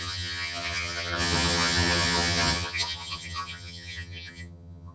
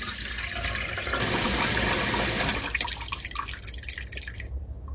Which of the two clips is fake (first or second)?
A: first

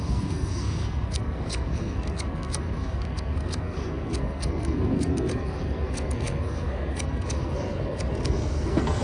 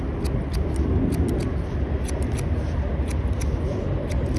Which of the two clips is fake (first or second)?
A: first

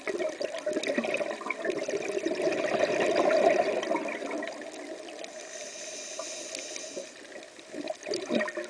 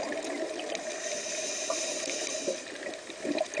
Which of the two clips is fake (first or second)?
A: second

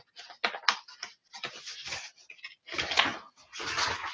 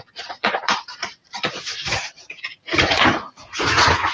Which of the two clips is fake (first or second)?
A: second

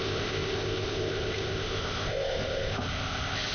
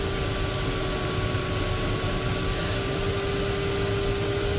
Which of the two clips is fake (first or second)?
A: first